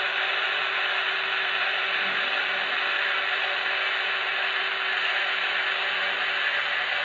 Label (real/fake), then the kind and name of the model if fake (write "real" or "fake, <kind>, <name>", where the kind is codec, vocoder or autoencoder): real